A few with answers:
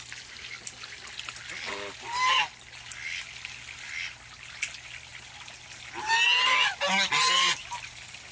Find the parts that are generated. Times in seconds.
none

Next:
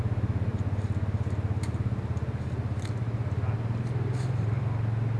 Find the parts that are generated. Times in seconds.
none